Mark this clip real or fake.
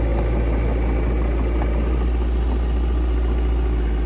real